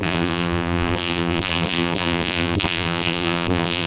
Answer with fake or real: fake